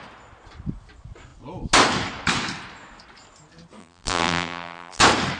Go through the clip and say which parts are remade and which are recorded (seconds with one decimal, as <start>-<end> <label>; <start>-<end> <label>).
0.0-3.8 recorded; 3.8-5.0 remade; 5.0-5.4 recorded